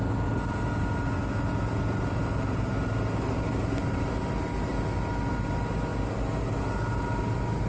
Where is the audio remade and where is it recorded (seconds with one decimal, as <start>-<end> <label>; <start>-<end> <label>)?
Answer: 0.0-7.7 recorded